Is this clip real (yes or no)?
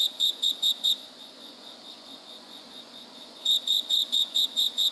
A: no